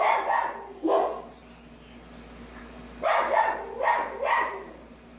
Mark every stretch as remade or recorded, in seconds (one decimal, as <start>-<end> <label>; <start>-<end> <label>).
0.0-3.3 recorded; 3.3-5.2 remade